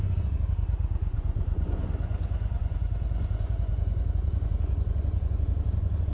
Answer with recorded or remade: remade